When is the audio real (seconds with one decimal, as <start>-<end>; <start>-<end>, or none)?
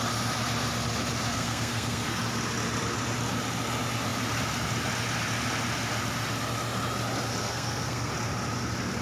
0.0-1.3; 2.2-7.4; 8.1-9.0